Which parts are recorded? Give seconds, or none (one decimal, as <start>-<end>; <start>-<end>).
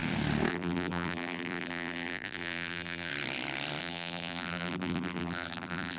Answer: 0.0-0.5; 3.1-3.8